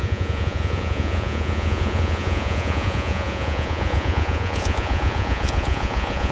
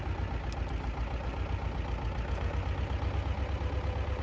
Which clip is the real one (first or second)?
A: second